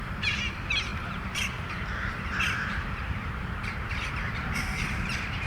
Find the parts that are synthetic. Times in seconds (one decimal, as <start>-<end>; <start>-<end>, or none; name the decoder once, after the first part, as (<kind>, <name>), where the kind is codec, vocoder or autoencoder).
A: 0.0-5.5 (vocoder, BigVGAN v2)